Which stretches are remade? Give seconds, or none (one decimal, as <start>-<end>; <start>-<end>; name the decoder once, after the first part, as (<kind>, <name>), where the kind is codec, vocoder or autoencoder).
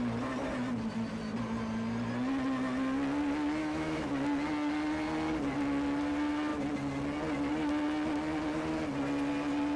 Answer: 3.6-4.1 (autoencoder, DAC-VAE)